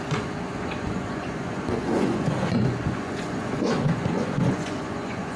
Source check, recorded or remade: remade